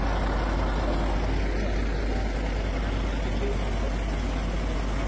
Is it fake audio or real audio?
real